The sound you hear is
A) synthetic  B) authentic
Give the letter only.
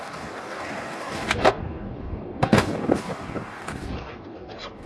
A